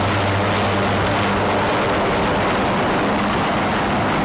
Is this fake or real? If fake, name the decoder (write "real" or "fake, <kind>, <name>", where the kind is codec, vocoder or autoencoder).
real